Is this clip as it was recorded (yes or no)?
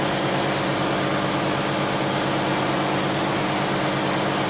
yes